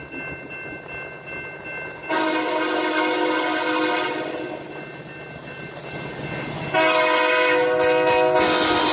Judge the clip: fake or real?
real